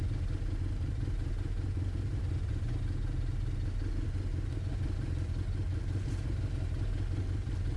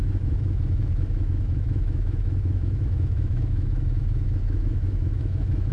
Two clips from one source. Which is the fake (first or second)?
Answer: second